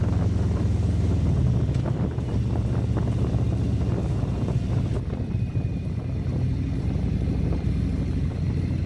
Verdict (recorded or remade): recorded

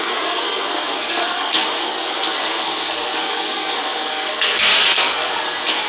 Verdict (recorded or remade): remade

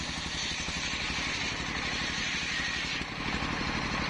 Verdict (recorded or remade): recorded